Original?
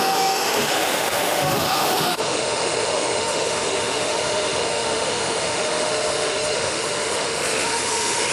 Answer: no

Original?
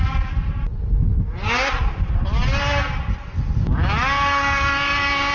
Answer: yes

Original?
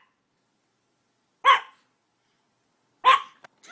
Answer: yes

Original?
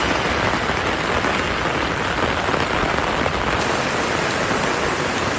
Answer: yes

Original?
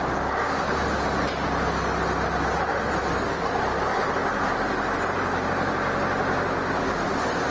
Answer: yes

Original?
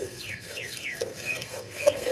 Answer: no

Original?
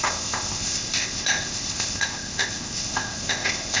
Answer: no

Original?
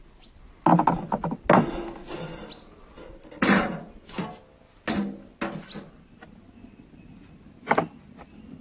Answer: yes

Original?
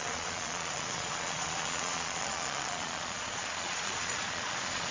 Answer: no